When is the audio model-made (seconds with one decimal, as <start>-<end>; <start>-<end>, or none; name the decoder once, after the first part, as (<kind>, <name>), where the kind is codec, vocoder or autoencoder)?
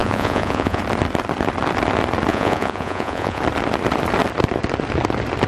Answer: 0.0-0.8 (vocoder, Vocos); 2.3-3.4